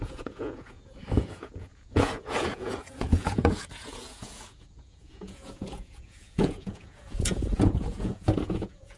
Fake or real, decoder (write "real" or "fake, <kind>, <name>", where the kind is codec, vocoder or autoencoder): fake, vocoder, Vocos